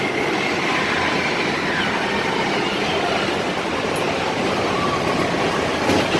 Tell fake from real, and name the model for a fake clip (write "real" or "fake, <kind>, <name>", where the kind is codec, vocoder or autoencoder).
real